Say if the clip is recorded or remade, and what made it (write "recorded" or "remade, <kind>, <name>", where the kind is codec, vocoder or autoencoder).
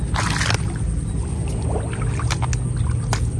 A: recorded